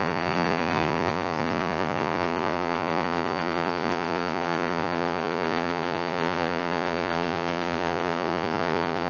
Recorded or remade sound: remade